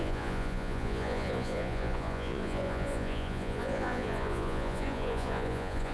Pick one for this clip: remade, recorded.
remade